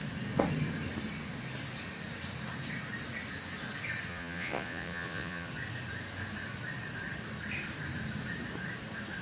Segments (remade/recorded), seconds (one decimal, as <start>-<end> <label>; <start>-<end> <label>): 0.0-4.1 recorded; 4.1-5.5 remade; 5.5-9.2 recorded